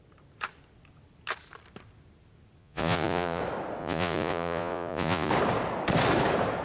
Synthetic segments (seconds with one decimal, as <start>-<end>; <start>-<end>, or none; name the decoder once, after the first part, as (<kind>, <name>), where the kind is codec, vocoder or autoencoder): 2.6-3.4 (vocoder, Vocos); 3.8-5.3